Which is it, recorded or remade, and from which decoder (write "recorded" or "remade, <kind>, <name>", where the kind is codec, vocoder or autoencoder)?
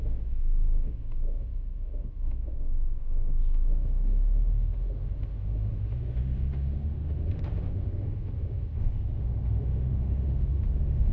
remade, autoencoder, DAC-VAE